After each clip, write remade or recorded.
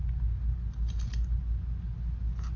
recorded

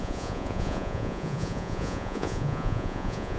remade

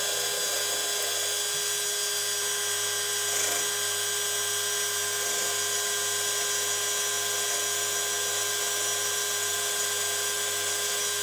recorded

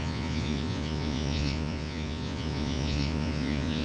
remade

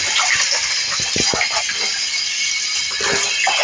recorded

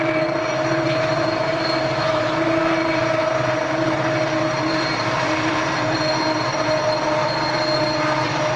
remade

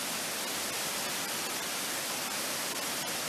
recorded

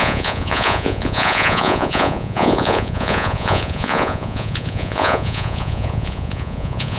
remade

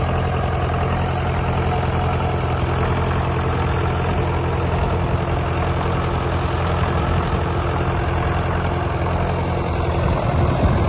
recorded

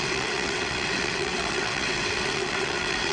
remade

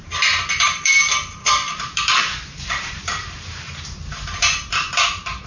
remade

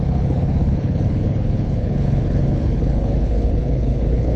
remade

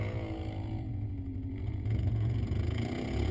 remade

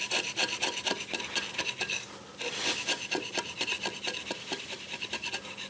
recorded